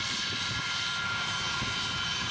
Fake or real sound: real